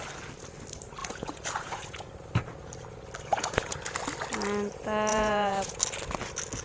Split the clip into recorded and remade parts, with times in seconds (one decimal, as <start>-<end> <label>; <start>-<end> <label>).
0.0-1.0 recorded; 1.0-2.1 remade; 2.1-3.3 recorded; 3.3-3.8 remade; 3.8-5.1 recorded; 5.1-5.8 remade; 5.8-6.6 recorded